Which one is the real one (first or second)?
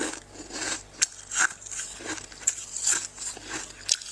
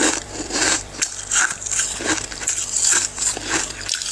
first